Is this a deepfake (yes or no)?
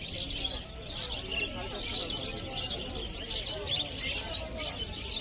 no